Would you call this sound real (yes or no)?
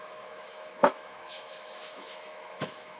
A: no